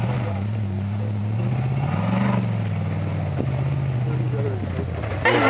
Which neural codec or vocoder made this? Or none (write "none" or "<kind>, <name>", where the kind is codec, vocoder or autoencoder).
none